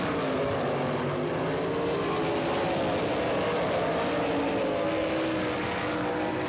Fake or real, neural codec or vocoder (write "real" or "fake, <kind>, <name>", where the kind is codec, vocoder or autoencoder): real